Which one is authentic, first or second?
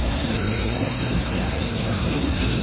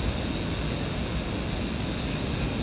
second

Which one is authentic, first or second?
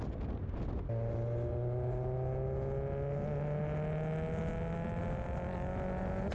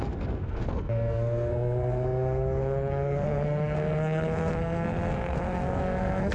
first